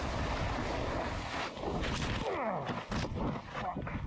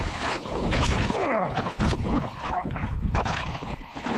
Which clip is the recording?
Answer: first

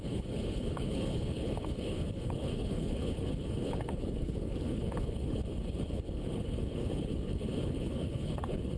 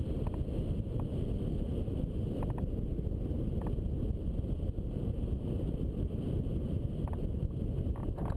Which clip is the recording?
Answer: second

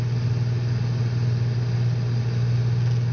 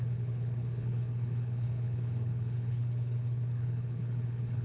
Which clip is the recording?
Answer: first